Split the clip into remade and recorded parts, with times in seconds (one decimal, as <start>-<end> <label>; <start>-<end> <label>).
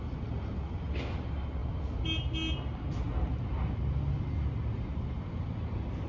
0.0-6.1 recorded